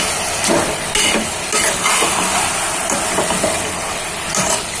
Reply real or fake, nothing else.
real